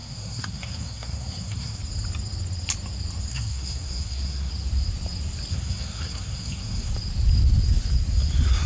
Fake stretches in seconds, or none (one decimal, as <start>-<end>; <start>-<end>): 0.0-1.8; 3.3-4.5; 5.5-6.9